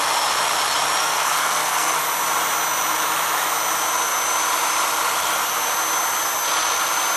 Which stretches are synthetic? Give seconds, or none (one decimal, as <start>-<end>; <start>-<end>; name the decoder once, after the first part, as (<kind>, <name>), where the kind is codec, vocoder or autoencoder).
1.0-2.0 (codec, SNAC)